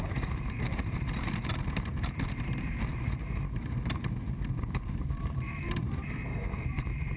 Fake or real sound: fake